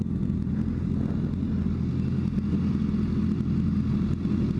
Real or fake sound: real